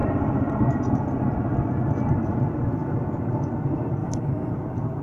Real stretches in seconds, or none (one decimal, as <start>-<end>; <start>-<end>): 0.0-4.0; 4.5-5.0